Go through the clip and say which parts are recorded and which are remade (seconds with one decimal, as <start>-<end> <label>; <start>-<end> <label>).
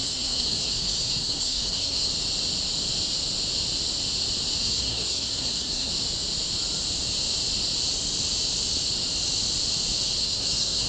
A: 0.0-2.1 remade; 2.1-4.6 recorded; 4.6-5.9 remade; 5.9-10.2 recorded; 10.2-10.9 remade